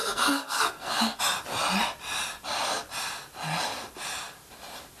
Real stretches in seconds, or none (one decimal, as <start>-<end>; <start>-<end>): 1.2-5.0